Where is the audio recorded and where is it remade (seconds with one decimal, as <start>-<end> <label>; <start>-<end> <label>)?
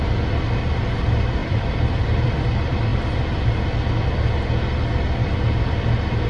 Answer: 0.0-1.4 recorded; 1.4-2.4 remade; 2.4-6.3 recorded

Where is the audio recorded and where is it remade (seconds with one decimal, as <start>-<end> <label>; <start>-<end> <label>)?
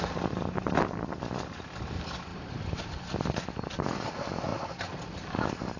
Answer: 0.0-2.3 recorded; 2.3-2.9 remade; 2.9-4.5 recorded; 4.5-5.8 remade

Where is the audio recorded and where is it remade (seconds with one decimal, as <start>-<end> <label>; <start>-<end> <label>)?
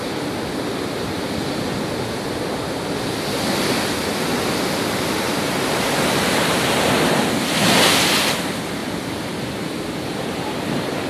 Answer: 0.0-8.8 recorded; 8.8-9.8 remade; 9.8-11.1 recorded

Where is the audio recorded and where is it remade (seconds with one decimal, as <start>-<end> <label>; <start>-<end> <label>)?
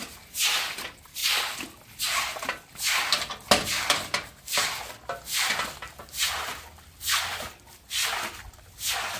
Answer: 0.0-9.2 recorded